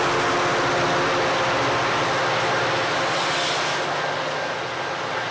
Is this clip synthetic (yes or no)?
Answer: no